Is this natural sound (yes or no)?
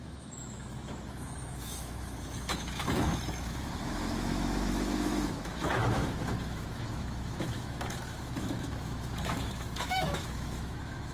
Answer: no